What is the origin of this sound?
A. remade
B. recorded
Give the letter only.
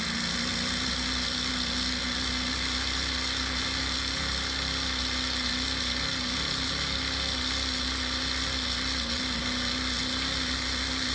B